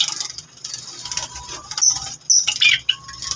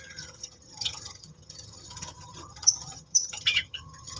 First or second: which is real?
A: first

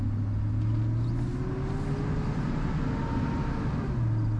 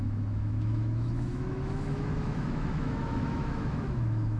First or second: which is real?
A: first